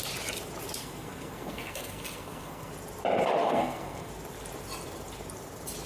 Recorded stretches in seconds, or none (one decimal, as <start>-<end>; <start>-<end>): 0.0-0.8; 2.7-3.4; 4.1-5.9